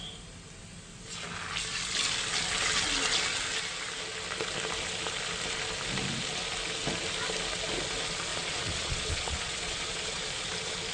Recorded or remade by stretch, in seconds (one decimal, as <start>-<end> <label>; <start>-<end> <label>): 0.0-8.3 recorded; 8.3-10.2 remade; 10.2-10.9 recorded

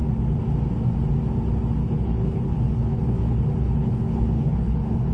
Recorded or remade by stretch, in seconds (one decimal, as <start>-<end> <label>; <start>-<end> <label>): 0.0-1.8 recorded; 1.8-5.1 remade

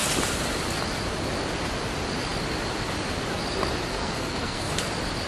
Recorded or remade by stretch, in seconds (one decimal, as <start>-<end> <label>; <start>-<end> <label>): 0.0-3.9 recorded; 3.9-4.7 remade; 4.7-5.3 recorded

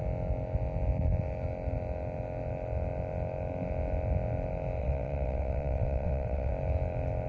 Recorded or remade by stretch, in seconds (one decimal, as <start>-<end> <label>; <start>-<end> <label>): 0.0-4.8 recorded; 4.8-6.5 remade; 6.5-7.3 recorded

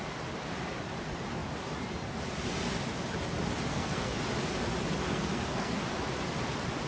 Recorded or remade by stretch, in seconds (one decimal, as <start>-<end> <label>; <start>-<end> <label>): 0.0-3.7 recorded; 3.7-4.2 remade; 4.2-5.1 recorded; 5.1-5.8 remade; 5.8-6.9 recorded

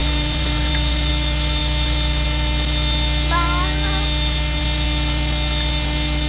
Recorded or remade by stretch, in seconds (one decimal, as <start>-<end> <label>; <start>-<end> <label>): 0.0-1.1 remade; 1.1-6.3 recorded

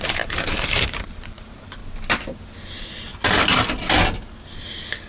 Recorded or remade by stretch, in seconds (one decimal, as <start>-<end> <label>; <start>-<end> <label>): 0.0-1.8 remade; 1.8-5.1 recorded